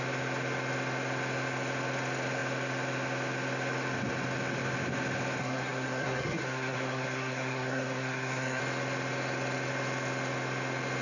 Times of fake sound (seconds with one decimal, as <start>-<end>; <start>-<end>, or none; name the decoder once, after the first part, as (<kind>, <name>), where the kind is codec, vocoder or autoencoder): 5.4-8.6 (codec, SNAC)

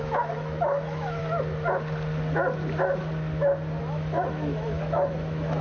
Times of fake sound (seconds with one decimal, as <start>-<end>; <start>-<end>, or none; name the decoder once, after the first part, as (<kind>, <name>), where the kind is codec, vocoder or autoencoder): 0.0-1.2 (autoencoder, DAC-VAE); 3.8-5.6

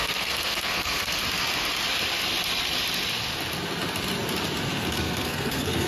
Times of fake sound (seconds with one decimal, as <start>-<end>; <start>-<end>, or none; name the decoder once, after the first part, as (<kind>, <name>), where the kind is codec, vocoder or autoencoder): 0.0-1.2 (codec, SNAC); 4.7-5.9